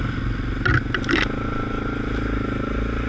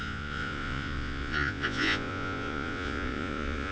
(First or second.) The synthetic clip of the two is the second